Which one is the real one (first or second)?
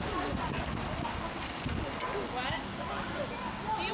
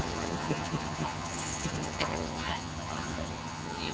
first